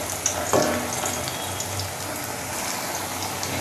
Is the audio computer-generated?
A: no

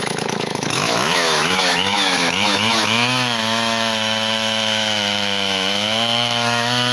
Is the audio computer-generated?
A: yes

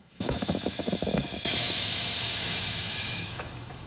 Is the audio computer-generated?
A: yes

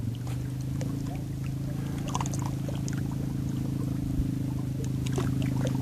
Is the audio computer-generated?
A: no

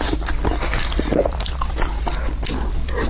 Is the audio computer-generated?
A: no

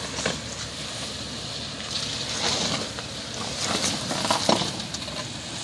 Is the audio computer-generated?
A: no